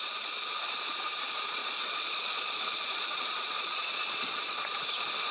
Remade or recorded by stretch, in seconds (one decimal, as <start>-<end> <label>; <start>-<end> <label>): 0.0-1.6 recorded; 1.6-4.8 remade; 4.8-5.3 recorded